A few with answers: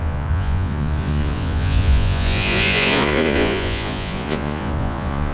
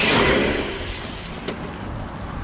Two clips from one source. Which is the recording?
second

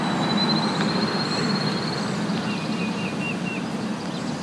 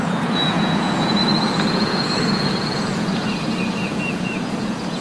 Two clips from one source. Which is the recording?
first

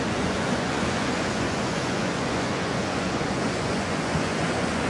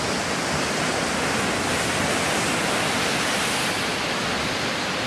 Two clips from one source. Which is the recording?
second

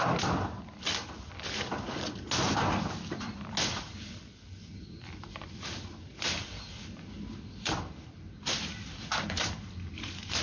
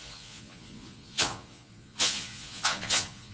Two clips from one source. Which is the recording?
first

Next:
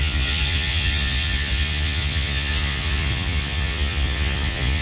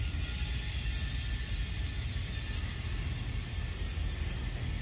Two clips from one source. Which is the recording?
second